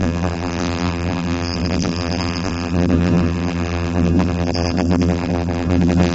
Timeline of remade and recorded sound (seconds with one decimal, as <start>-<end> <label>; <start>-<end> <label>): 0.0-6.1 remade